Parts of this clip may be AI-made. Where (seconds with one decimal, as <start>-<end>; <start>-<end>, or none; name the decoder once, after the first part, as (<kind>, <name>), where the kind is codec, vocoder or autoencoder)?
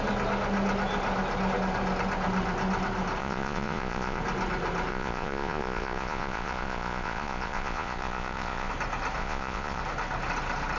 3.2-4.2 (vocoder, Vocos); 4.9-8.7; 9.2-9.8